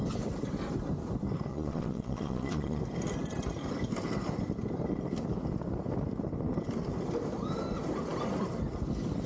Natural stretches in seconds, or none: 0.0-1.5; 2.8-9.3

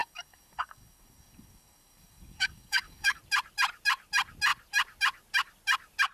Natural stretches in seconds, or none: 3.2-6.1

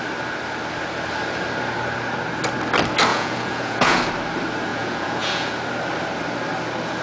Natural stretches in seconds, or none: 0.0-3.1; 4.1-4.7; 5.5-7.0

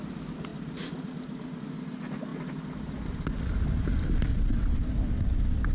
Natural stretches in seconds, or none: 0.0-4.3; 4.8-5.7